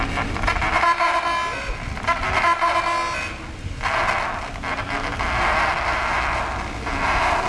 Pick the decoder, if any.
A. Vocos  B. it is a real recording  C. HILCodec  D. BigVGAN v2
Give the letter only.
B